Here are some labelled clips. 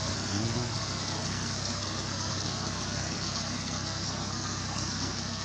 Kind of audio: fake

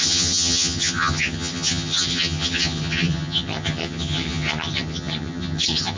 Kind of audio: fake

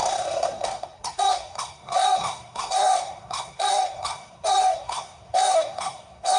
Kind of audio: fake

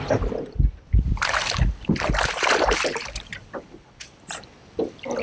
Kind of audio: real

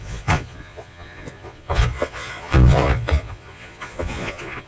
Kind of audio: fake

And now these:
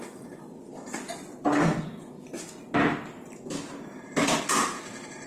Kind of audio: real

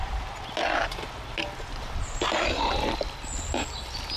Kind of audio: real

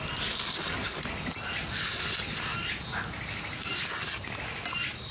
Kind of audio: real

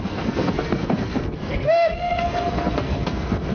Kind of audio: fake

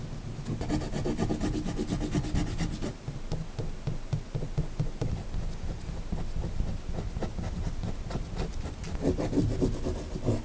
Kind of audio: real